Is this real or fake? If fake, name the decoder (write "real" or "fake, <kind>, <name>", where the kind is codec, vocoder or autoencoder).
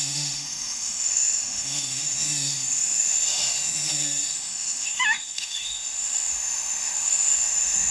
fake, autoencoder, DAC-VAE